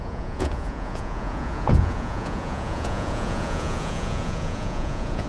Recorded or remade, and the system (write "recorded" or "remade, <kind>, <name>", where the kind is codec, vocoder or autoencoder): remade, vocoder, Vocos